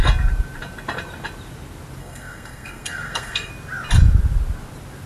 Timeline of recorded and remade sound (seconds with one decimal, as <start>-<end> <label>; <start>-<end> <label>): 0.0-2.0 recorded; 2.0-3.5 remade; 3.5-5.1 recorded